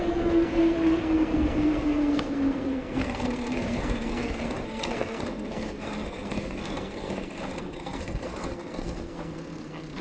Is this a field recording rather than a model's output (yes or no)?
no